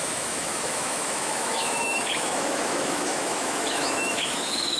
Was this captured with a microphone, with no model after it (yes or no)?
no